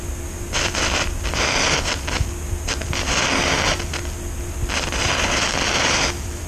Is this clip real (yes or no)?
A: yes